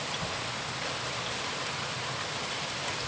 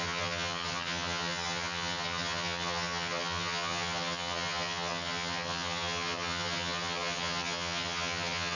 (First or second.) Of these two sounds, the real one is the first